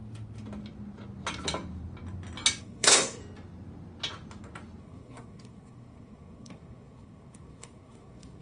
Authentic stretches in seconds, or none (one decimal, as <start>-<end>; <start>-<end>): 0.0-2.6; 3.2-4.8